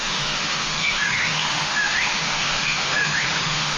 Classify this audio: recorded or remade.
remade